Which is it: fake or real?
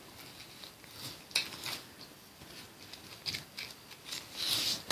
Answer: real